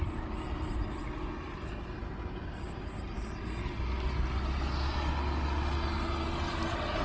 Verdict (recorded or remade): recorded